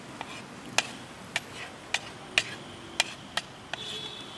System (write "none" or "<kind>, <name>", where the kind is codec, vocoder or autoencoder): none